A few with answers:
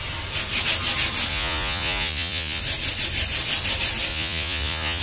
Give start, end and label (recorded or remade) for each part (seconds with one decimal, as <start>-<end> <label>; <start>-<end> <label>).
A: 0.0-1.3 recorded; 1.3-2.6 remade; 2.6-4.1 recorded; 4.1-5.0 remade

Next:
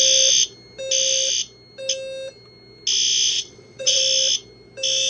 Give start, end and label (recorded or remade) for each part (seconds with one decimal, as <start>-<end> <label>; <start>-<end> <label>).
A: 0.0-3.3 recorded; 3.3-4.0 remade; 4.0-5.1 recorded

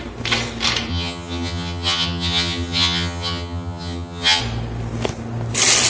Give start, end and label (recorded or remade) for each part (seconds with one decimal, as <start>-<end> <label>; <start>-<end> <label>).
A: 0.0-0.9 recorded; 0.9-4.4 remade; 4.4-5.9 recorded

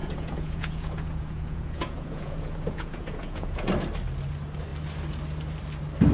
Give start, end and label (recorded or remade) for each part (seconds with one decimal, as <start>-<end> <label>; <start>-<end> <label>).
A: 0.0-3.7 remade; 3.7-6.1 recorded